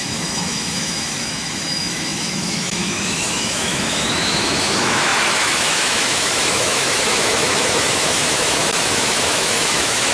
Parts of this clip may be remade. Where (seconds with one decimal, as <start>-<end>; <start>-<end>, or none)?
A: 0.0-10.1